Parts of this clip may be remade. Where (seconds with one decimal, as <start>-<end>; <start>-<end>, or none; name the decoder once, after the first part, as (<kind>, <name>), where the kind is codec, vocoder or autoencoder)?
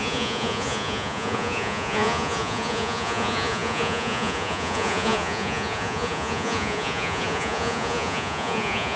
0.0-9.0 (vocoder, Vocos)